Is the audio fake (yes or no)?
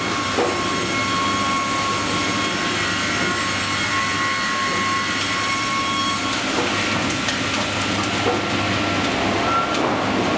no